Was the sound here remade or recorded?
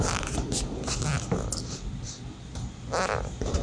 recorded